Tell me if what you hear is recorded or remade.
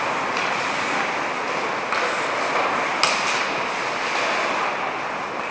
recorded